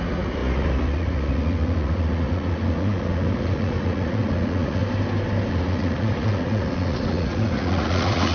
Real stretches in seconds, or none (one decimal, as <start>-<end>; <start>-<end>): 4.8-5.5